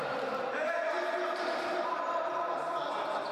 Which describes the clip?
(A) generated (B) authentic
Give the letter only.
B